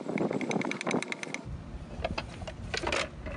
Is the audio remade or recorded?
recorded